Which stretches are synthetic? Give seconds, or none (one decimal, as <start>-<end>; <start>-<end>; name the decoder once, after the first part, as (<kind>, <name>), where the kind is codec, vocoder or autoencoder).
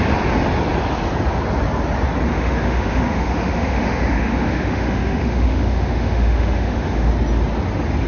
2.3-7.1 (autoencoder, DAC-VAE)